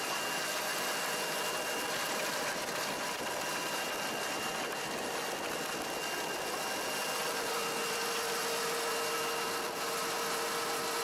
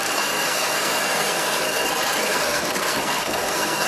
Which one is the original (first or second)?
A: first